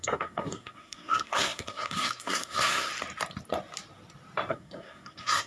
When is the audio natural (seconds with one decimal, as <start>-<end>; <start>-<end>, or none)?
2.9-4.5